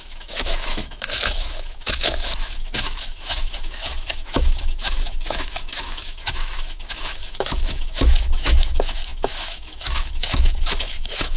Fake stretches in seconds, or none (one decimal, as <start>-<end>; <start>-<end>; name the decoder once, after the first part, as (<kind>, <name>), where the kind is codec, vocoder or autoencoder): 0.0-11.4 (autoencoder, DAC-VAE)